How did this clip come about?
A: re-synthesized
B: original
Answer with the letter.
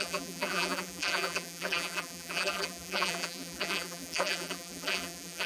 A